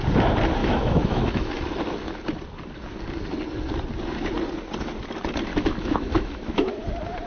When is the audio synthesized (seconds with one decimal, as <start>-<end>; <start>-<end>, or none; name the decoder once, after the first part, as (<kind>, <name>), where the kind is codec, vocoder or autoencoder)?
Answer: 0.6-1.5 (autoencoder, DAC-VAE); 5.5-6.7